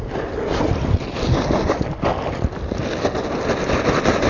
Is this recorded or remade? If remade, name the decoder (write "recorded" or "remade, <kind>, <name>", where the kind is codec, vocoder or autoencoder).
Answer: recorded